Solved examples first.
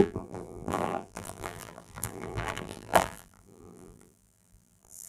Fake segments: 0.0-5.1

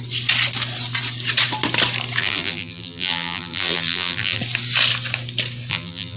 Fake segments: 2.2-4.4; 5.7-6.2